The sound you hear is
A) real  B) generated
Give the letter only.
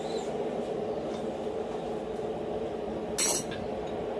A